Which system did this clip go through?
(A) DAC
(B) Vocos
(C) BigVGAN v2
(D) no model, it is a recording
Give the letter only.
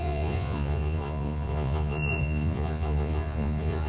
B